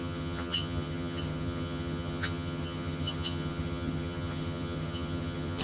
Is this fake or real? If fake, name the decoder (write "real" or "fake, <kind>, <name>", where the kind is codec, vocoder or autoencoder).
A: fake, vocoder, HiFi-GAN